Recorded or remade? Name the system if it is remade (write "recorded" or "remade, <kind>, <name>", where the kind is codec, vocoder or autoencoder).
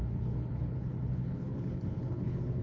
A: remade, codec, HILCodec